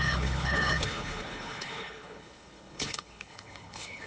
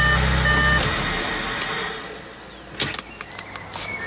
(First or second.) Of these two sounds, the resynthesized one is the first